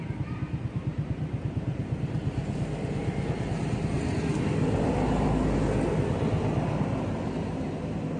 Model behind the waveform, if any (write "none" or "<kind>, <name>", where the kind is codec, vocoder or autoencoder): none